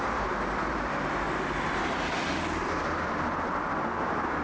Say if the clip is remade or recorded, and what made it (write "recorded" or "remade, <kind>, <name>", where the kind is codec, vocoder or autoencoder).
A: recorded